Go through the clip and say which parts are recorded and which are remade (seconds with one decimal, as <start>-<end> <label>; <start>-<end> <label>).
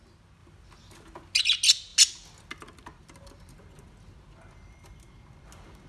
0.0-5.9 recorded